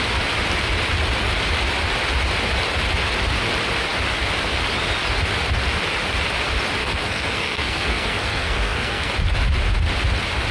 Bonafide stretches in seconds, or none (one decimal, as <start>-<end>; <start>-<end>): 0.0-6.8; 9.1-10.5